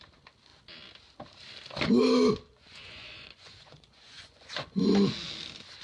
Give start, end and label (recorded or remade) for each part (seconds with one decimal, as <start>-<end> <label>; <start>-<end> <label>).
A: 0.0-2.5 recorded; 2.5-4.8 remade; 4.8-5.8 recorded